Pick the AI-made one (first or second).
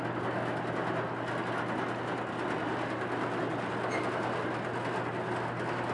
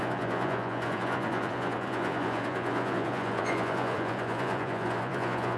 second